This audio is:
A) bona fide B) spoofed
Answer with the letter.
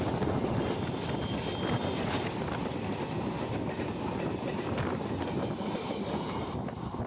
A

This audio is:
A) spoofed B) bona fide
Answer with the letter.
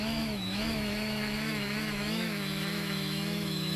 A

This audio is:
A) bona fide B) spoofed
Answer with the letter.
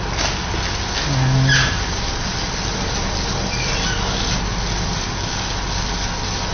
A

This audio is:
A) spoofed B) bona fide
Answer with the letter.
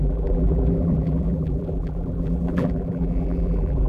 A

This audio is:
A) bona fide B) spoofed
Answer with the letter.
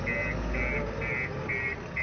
A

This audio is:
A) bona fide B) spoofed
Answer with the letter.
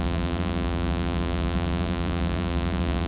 B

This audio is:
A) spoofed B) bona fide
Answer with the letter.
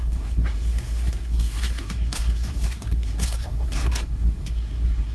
A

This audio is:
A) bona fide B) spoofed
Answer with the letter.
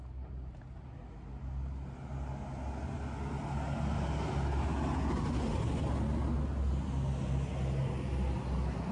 A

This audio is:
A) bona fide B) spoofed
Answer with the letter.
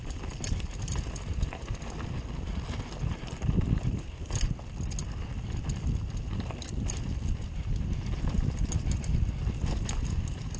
A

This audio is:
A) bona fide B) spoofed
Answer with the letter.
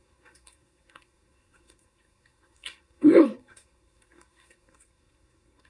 B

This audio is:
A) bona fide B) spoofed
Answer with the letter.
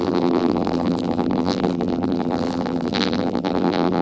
B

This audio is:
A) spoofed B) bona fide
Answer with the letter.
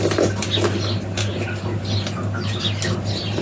B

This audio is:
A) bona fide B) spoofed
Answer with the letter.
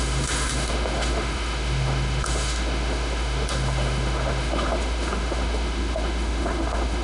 B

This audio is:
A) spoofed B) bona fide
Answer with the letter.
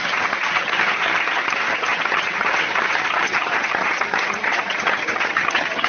A